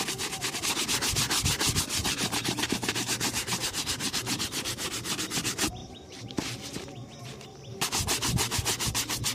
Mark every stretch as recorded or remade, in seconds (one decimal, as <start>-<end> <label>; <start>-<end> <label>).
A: 0.0-2.0 recorded; 2.0-5.2 remade; 5.2-5.8 recorded; 5.8-7.2 remade; 7.2-9.3 recorded